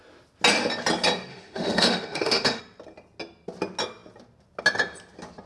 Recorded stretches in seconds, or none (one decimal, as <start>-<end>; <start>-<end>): 0.0-1.3; 2.6-5.5